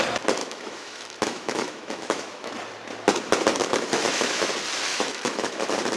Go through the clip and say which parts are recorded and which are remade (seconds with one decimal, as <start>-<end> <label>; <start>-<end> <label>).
0.0-0.4 recorded; 0.4-2.5 remade; 2.5-3.6 recorded; 3.6-4.5 remade; 4.5-4.9 recorded; 4.9-5.6 remade; 5.6-6.0 recorded